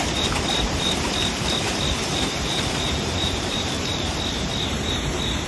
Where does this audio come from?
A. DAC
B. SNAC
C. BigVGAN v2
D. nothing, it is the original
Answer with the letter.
C